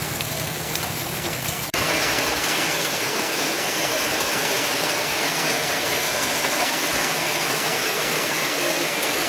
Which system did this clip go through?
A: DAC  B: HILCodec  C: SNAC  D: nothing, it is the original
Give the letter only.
C